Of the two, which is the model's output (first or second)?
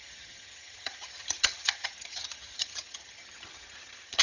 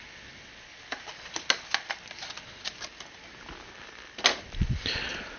first